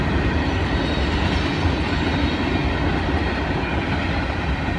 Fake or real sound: real